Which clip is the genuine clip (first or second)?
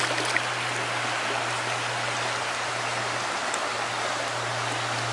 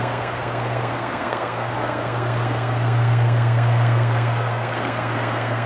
first